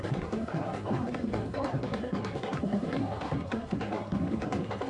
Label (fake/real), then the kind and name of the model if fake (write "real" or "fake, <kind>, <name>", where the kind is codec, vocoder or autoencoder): fake, codec, SNAC